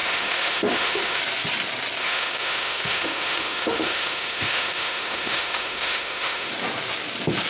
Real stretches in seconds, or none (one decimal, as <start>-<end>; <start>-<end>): 1.2-2.0; 6.5-7.5